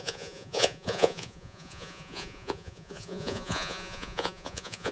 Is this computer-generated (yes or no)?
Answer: yes